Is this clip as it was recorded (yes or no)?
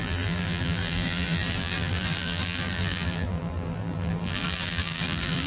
no